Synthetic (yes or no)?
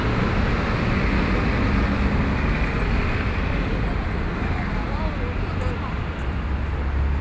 no